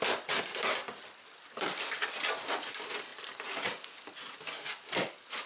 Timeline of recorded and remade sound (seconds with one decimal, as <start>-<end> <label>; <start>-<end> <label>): 0.0-0.5 remade; 0.5-1.8 recorded; 1.8-5.5 remade

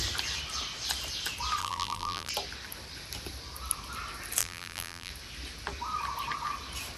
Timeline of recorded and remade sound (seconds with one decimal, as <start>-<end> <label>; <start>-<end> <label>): 0.0-1.6 recorded; 1.6-2.3 remade; 2.3-4.4 recorded; 4.4-5.1 remade; 5.1-7.0 recorded